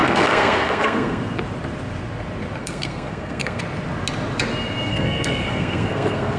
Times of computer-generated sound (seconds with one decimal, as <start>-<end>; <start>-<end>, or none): 0.0-1.2; 2.6-3.6; 4.9-6.4